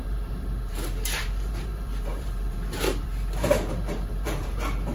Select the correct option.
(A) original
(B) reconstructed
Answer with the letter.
B